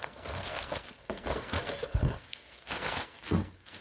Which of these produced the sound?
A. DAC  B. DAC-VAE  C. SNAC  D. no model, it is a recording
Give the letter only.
C